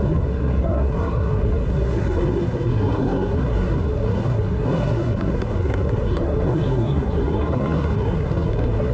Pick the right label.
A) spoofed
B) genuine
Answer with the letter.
A